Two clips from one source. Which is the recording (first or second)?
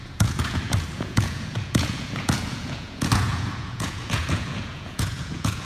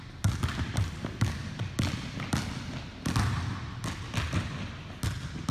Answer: second